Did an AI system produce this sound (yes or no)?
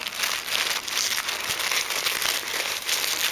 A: yes